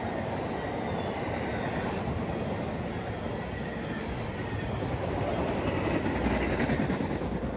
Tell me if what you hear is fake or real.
real